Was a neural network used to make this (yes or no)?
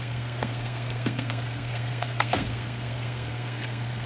yes